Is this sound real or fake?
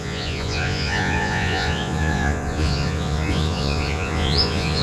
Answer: fake